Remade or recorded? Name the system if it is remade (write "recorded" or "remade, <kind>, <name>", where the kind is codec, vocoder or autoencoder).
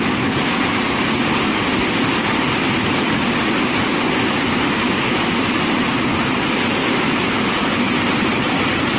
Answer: recorded